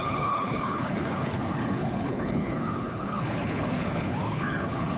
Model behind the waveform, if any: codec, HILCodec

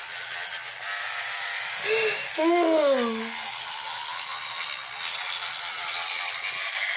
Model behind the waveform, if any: none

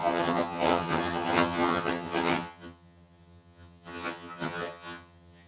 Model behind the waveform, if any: vocoder, HiFi-GAN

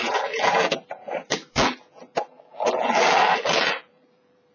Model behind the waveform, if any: vocoder, BigVGAN v2